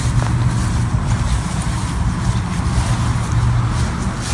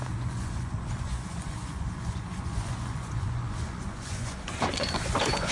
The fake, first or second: second